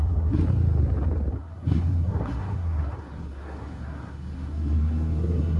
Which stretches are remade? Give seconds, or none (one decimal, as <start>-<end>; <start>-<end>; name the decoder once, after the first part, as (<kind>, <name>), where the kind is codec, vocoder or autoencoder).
0.0-0.4 (codec, SNAC); 1.3-5.6